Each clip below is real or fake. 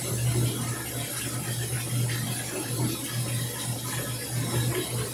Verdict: real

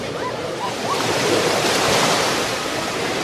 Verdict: fake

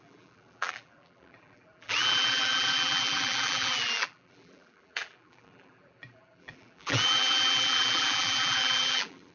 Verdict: fake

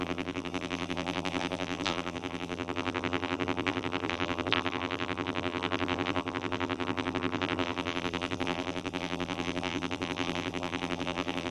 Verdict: fake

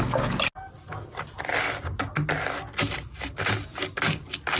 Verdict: real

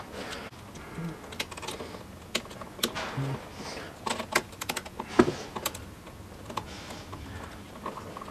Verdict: real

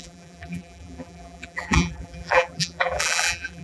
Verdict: fake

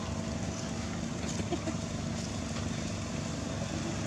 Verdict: real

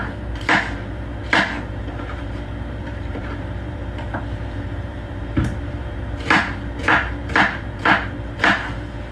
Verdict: fake